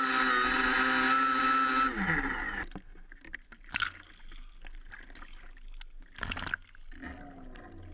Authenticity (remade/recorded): recorded